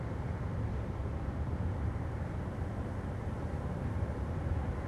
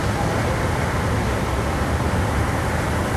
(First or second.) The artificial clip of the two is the first